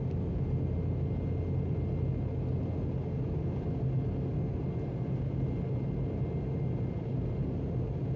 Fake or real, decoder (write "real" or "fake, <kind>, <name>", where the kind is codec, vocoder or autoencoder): real